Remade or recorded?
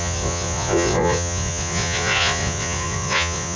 remade